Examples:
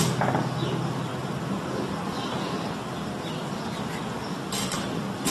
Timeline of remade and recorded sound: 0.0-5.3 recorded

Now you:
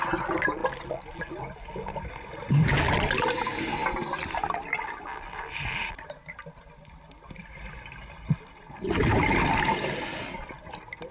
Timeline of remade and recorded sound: 0.0-11.1 recorded